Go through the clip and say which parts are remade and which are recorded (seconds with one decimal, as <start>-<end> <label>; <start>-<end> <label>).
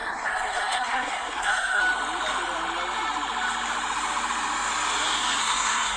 0.0-1.8 remade; 1.8-5.4 recorded; 5.4-6.0 remade